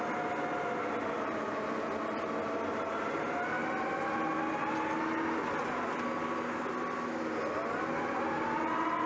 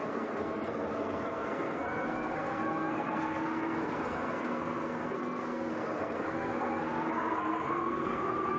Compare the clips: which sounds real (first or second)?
first